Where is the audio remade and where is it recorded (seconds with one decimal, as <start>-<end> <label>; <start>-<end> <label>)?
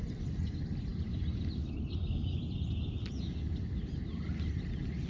0.0-5.1 recorded